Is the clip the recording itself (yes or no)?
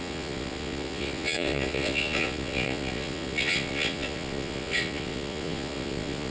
no